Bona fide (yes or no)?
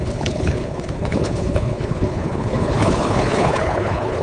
no